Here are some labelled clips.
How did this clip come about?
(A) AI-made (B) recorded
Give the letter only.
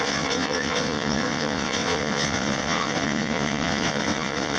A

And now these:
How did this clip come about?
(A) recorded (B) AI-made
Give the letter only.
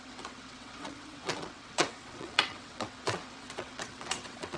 B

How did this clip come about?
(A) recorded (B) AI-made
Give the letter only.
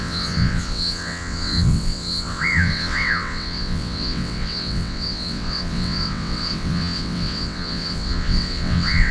B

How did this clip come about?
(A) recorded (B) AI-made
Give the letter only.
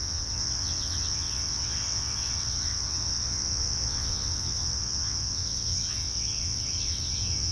B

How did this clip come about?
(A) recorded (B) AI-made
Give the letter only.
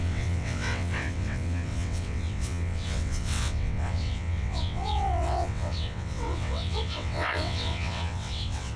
B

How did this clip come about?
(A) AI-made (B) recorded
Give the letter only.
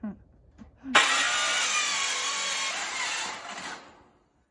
B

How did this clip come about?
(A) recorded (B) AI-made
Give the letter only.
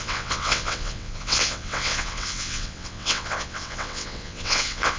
B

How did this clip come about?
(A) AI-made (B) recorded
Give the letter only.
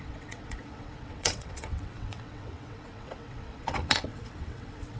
A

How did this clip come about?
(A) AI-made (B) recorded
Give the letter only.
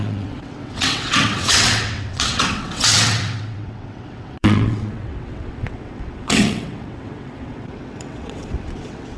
A